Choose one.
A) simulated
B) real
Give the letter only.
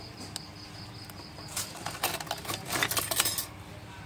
B